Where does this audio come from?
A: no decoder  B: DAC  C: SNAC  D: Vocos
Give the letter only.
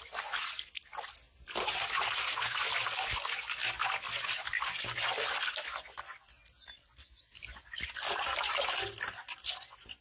A